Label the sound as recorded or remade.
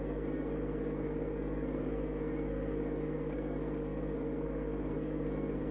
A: remade